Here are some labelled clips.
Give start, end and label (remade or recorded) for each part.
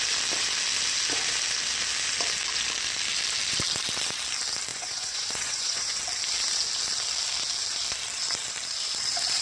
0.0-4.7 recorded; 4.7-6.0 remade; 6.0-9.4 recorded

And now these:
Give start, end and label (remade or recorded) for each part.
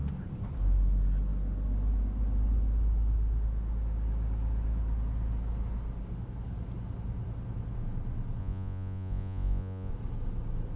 0.0-8.4 recorded; 8.4-9.9 remade; 9.9-10.8 recorded